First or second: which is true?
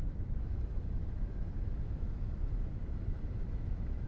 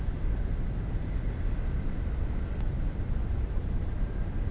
second